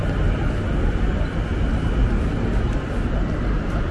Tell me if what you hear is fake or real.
real